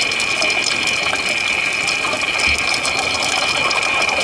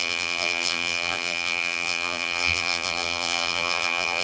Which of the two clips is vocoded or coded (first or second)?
second